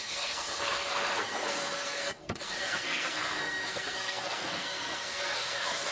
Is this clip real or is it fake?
fake